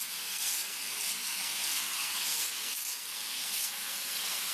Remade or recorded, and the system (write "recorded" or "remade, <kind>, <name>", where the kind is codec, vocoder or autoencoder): remade, codec, SNAC